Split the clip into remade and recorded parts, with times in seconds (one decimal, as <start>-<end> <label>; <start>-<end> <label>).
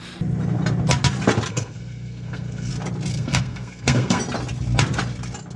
0.0-1.5 recorded; 1.5-2.7 remade; 2.7-3.1 recorded; 3.1-4.2 remade; 4.2-5.6 recorded